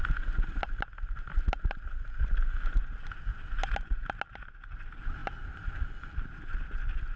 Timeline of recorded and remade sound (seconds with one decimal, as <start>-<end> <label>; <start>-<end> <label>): 0.0-7.2 recorded